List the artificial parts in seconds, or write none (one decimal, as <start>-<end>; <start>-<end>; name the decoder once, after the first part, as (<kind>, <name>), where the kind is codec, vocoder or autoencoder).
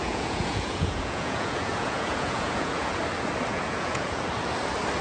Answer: 0.0-3.0 (vocoder, Vocos); 3.5-4.2